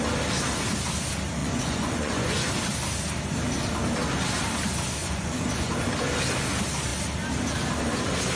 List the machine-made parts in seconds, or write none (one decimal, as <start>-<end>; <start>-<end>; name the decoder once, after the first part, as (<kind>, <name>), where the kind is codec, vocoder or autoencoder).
1.4-2.5 (vocoder, Vocos); 5.0-5.7